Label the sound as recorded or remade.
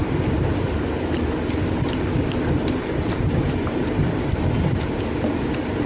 remade